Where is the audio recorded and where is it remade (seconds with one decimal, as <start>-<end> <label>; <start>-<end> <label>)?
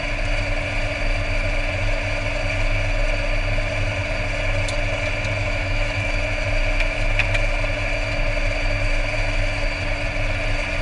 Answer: 0.0-5.4 recorded; 5.4-6.1 remade; 6.1-10.8 recorded